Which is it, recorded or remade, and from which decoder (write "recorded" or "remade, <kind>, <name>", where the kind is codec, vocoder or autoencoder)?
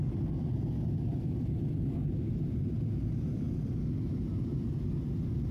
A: recorded